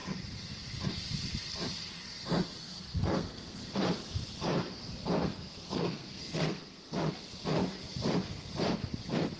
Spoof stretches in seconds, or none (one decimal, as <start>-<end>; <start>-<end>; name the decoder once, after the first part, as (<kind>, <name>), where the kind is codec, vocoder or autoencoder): 2.6-3.6 (codec, SNAC); 5.2-7.1